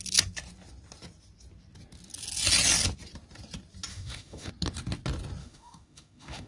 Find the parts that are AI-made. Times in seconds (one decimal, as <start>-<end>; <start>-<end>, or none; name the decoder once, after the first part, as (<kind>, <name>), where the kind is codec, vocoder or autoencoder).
3.9-4.5 (autoencoder, DAC-VAE); 5.4-6.5